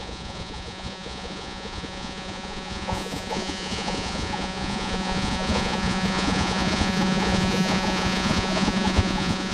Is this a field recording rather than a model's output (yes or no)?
no